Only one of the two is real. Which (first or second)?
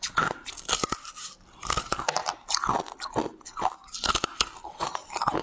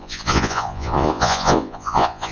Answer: first